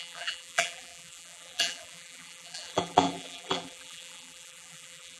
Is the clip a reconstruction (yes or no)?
yes